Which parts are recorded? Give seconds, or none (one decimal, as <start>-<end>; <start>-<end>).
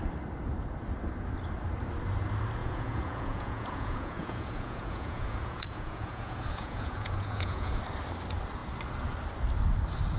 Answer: 0.0-2.6; 7.8-10.2